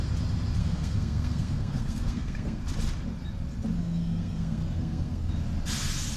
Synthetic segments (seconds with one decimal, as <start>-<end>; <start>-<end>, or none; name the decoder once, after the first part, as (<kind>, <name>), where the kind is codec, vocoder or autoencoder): 0.6-2.6 (codec, SNAC); 3.8-5.3